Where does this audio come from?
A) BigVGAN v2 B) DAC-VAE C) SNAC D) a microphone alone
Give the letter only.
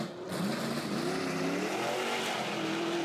A